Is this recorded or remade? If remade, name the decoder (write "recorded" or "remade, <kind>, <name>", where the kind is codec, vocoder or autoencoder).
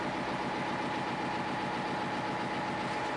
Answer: recorded